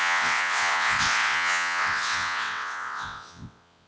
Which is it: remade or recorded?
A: remade